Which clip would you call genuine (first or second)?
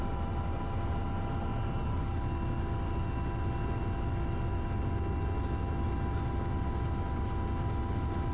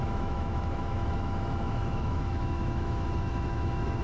first